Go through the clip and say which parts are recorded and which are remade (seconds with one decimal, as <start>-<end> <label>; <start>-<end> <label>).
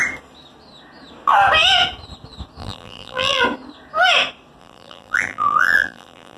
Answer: 0.0-2.6 recorded; 2.6-3.4 remade; 3.4-4.6 recorded; 4.6-6.4 remade